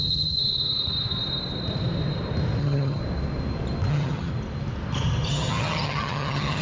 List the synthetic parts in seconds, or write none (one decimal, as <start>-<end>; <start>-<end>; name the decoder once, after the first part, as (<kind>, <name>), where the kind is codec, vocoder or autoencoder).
0.0-0.4 (vocoder, HiFi-GAN); 2.6-3.0; 3.9-4.3; 5.3-6.6